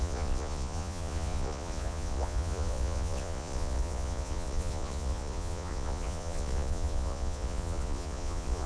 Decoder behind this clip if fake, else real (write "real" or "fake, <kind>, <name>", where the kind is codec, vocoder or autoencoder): fake, vocoder, Vocos